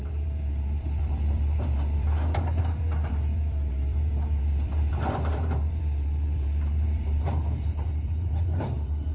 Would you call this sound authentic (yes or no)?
no